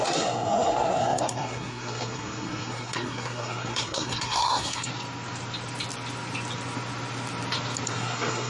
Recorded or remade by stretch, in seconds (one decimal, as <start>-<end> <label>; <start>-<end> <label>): 0.0-4.9 remade; 4.9-7.9 recorded; 7.9-8.5 remade